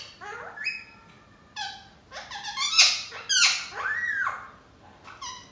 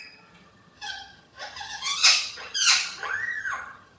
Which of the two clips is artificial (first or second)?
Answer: second